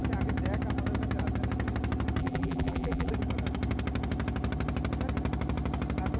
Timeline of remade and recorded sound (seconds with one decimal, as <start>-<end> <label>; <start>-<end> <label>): 0.0-2.2 recorded; 2.2-3.1 remade; 3.1-6.2 recorded